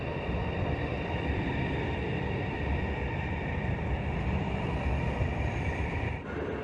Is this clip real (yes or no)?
no